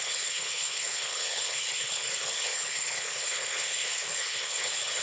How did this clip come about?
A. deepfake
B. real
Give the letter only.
A